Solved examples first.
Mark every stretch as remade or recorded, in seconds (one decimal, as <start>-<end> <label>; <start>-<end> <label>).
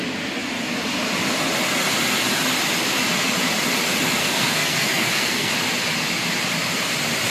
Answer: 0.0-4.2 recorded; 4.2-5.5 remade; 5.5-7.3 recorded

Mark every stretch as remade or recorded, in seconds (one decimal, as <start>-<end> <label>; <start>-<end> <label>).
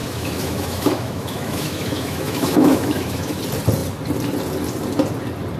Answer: 0.0-3.4 remade; 3.4-5.6 recorded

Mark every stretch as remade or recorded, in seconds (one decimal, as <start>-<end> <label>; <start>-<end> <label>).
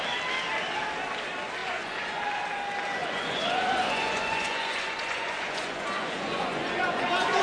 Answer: 0.0-1.6 recorded; 1.6-2.2 remade; 2.2-3.0 recorded; 3.0-7.4 remade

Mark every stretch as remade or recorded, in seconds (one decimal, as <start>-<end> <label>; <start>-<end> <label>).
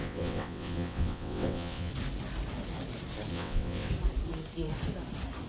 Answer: 0.0-1.9 remade; 1.9-3.3 recorded; 3.3-3.9 remade; 3.9-5.5 recorded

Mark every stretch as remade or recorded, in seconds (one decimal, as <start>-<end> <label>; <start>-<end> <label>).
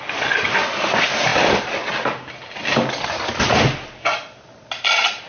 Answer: 0.0-5.3 recorded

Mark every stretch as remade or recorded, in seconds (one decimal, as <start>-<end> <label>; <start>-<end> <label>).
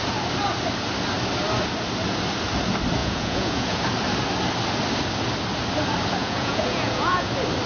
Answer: 0.0-3.0 recorded; 3.0-3.8 remade; 3.8-6.2 recorded; 6.2-7.3 remade; 7.3-7.7 recorded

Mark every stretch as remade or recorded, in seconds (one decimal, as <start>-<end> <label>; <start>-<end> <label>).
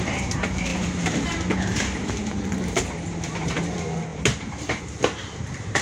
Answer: 0.0-5.8 remade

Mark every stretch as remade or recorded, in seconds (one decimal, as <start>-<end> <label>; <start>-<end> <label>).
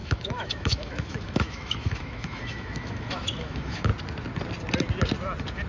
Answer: 0.0-3.9 remade; 3.9-5.7 recorded